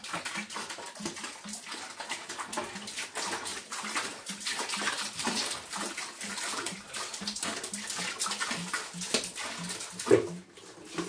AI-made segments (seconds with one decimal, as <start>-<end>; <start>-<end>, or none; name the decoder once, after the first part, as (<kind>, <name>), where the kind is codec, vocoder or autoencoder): 3.5-7.5 (vocoder, BigVGAN v2)